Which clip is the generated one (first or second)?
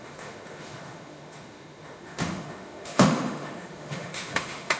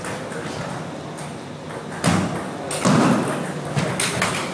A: first